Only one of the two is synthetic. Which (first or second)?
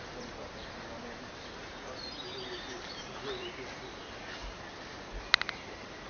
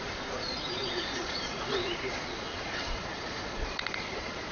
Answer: second